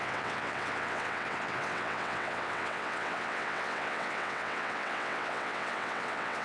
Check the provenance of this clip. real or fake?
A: fake